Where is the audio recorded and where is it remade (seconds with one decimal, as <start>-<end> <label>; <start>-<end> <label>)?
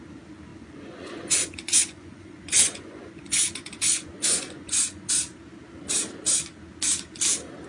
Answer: 0.0-0.5 recorded; 0.5-5.1 remade; 5.1-7.7 recorded